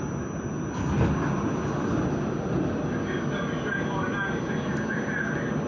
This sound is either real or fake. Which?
real